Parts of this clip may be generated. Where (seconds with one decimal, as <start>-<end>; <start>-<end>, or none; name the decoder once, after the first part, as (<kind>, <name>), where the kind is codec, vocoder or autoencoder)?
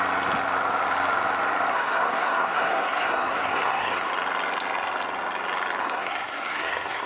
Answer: 1.7-4.1 (codec, SNAC); 5.8-7.1